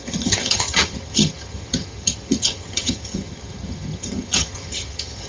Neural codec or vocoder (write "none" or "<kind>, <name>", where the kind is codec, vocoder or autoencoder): vocoder, HiFi-GAN